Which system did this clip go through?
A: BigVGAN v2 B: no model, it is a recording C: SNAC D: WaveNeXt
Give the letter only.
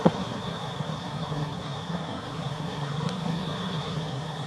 C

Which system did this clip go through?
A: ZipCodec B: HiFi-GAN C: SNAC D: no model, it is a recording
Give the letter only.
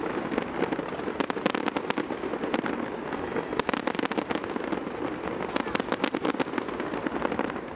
D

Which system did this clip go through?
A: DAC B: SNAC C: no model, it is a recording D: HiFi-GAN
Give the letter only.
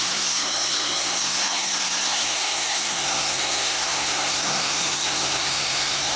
B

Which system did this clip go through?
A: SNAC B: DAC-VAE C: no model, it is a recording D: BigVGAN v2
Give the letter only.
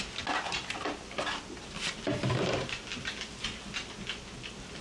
C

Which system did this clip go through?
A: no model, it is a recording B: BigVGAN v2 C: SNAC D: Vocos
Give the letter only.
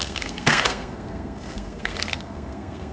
C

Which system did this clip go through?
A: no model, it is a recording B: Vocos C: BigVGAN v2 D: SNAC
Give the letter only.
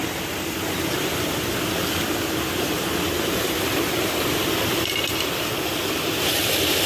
A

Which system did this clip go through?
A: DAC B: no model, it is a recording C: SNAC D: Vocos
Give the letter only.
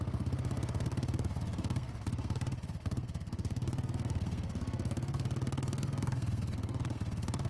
C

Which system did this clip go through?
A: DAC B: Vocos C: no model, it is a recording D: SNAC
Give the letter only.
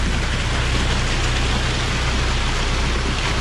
C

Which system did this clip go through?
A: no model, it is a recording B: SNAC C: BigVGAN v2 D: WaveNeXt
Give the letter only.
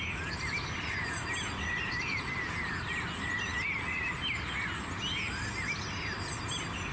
A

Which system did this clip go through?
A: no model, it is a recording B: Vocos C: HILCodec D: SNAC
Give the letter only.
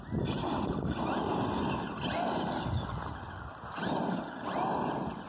A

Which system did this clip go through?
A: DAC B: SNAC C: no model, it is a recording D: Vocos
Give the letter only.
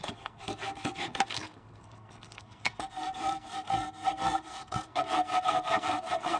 B